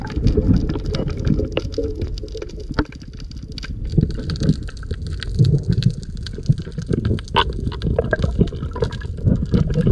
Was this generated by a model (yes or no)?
no